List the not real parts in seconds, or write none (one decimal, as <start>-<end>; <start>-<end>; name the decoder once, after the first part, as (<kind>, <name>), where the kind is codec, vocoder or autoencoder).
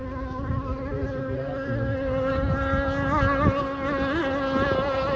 none